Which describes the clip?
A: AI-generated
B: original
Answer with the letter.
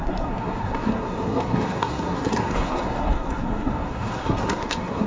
A